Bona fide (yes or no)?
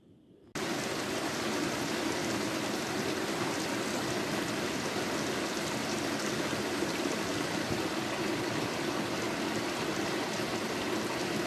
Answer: yes